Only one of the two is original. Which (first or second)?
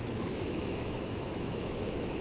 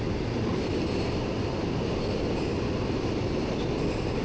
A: second